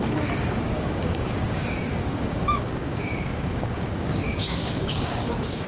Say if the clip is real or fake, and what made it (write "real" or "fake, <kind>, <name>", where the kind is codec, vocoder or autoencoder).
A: fake, codec, DAC